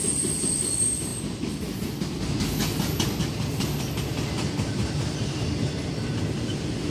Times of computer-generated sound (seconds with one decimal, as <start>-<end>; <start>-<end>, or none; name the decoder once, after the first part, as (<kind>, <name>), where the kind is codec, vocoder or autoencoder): none